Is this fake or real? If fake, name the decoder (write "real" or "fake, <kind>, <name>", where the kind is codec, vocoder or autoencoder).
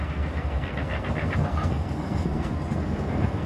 fake, codec, SNAC